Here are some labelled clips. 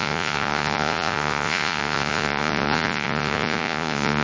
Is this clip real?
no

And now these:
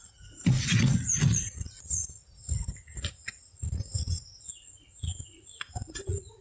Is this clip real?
no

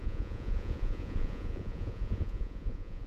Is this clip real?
no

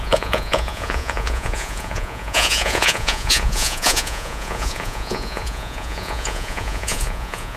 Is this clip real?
no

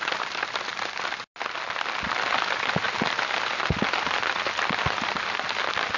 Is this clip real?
yes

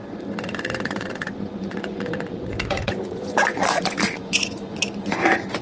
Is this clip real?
no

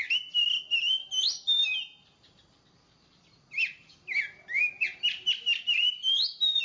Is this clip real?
yes